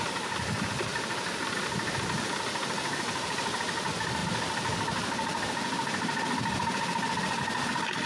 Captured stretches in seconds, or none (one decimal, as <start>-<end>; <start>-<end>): 0.0-8.1